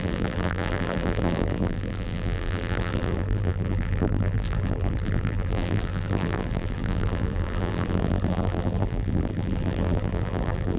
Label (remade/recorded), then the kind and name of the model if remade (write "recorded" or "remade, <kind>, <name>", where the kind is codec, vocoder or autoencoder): remade, vocoder, BigVGAN v2